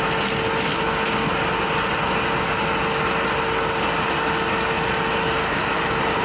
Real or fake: real